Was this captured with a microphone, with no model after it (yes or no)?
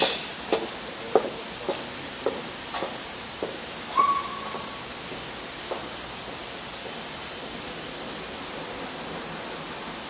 yes